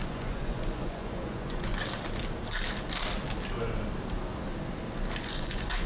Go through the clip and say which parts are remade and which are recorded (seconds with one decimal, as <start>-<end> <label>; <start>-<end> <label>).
0.0-1.7 remade; 1.7-5.2 recorded; 5.2-5.9 remade